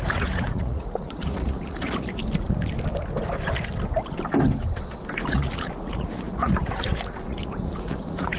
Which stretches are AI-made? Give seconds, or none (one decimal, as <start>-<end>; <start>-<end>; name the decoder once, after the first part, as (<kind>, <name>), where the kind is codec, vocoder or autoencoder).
0.0-2.2 (vocoder, Vocos); 5.3-8.4

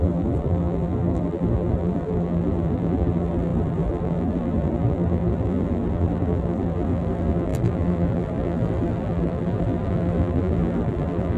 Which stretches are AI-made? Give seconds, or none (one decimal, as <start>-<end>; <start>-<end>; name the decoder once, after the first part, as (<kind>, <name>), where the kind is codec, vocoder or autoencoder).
0.0-11.4 (vocoder, BigVGAN v2)

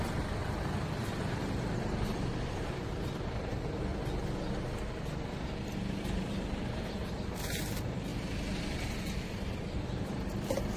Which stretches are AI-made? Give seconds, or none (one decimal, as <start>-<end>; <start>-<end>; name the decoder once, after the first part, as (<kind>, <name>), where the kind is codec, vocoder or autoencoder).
0.0-3.9 (vocoder, BigVGAN v2); 5.9-10.8